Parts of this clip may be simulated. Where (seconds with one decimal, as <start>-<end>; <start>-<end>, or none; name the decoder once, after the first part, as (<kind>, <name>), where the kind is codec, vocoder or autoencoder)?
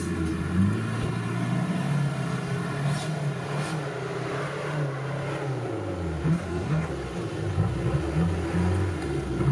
6.3-6.9 (codec, SNAC)